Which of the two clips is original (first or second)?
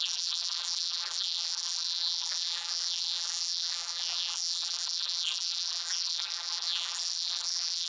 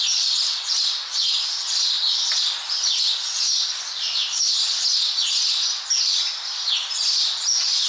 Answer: second